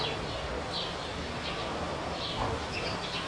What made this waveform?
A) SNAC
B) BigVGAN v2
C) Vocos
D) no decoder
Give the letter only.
D